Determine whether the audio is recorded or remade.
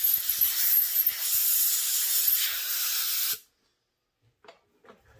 recorded